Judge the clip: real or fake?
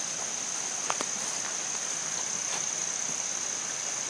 real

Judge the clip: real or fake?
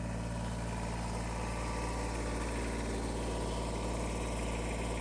real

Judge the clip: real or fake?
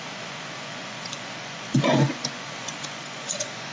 fake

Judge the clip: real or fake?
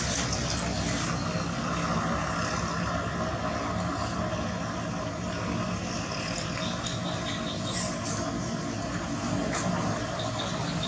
real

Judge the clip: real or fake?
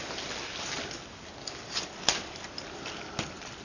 real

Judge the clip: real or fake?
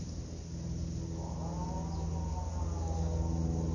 real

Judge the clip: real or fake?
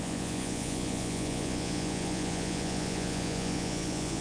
fake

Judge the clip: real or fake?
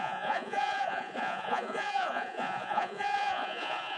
fake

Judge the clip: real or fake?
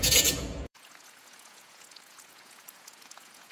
fake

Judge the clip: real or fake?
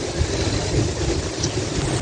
real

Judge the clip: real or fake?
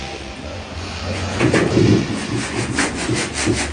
fake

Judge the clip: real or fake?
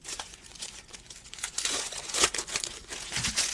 fake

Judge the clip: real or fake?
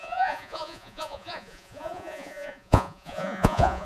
fake